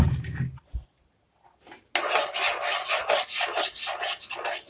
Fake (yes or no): no